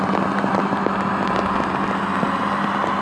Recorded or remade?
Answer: recorded